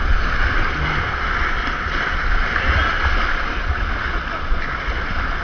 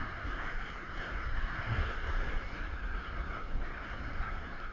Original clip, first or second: first